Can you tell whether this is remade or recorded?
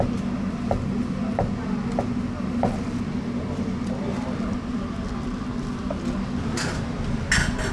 recorded